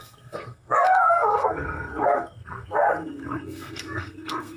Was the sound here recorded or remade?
remade